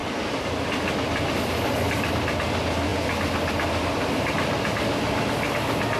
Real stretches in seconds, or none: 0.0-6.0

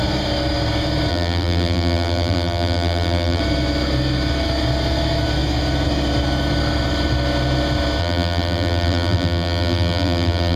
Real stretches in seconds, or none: 0.0-1.1; 3.4-8.0

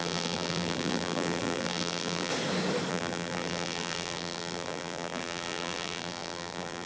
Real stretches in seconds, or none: 2.3-2.9

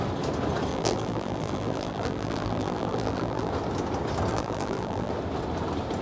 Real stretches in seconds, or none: 0.0-0.7; 3.5-4.3; 5.1-6.0

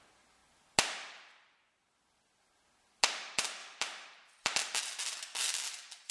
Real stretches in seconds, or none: 0.0-6.1

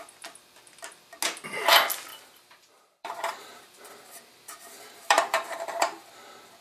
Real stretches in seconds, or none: 0.0-2.1; 6.1-6.6

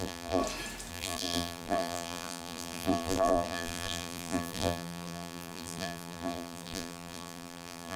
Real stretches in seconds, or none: 0.4-0.9

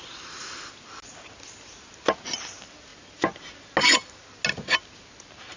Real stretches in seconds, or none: 0.0-5.6